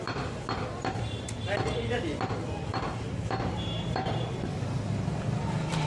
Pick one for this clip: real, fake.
fake